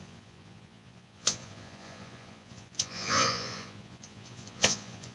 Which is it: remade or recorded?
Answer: remade